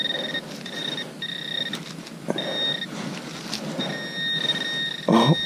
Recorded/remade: recorded